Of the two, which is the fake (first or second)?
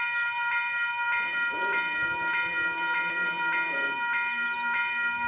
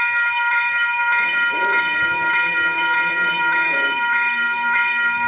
second